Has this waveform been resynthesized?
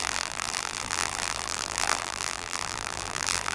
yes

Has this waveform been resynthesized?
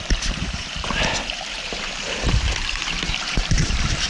yes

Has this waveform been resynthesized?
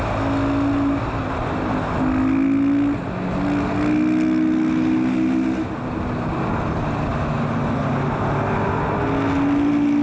no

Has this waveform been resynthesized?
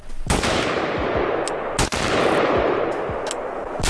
no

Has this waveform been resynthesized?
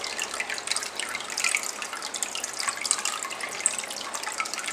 no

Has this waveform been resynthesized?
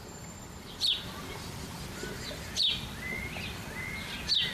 yes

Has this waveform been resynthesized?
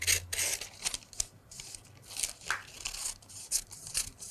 no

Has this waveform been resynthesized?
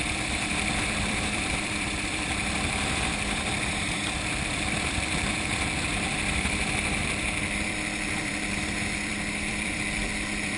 yes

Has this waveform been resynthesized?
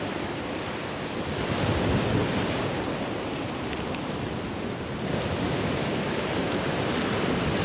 yes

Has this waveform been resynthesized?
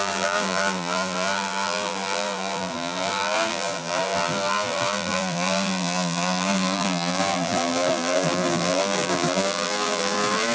yes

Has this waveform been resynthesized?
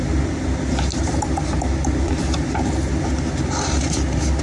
yes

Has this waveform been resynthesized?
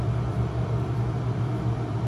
yes